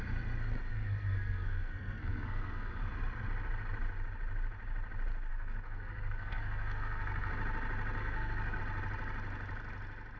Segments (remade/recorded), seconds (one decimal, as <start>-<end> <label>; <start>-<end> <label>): 0.0-0.7 recorded; 0.7-2.8 remade; 2.8-5.3 recorded; 5.3-7.3 remade; 7.3-8.0 recorded; 8.0-8.6 remade; 8.6-10.2 recorded